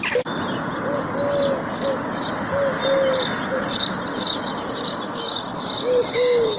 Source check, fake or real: real